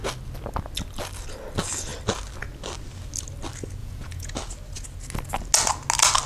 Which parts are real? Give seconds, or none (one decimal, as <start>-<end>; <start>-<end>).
0.0-3.8; 4.3-6.3